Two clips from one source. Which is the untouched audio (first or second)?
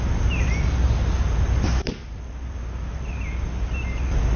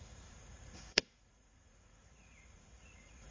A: first